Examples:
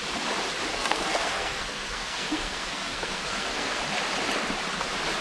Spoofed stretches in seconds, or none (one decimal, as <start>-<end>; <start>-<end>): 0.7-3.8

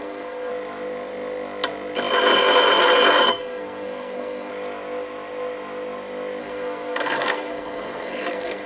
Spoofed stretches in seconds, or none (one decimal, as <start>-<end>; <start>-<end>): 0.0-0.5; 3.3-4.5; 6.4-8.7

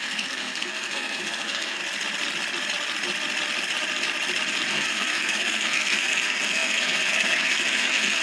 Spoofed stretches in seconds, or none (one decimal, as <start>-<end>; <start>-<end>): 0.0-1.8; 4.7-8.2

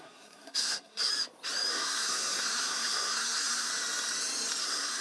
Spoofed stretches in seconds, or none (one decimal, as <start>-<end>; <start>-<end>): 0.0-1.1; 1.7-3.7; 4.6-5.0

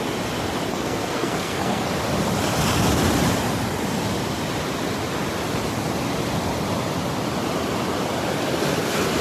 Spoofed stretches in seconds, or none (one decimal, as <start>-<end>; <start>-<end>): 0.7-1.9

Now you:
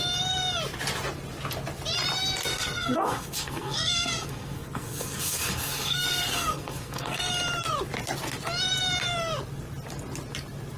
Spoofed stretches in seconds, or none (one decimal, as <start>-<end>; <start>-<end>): 2.5-7.3

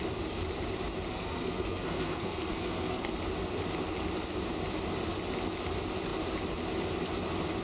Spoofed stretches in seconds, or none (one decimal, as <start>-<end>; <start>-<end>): 1.1-3.1